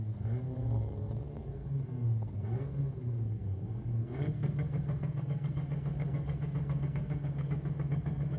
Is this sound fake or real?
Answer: fake